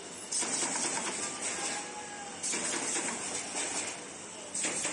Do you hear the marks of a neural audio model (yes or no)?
no